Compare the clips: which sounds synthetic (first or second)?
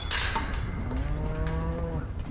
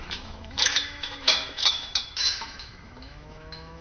second